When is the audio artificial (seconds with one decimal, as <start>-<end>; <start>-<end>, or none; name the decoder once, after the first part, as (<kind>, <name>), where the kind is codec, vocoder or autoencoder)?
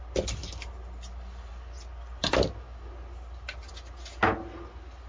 none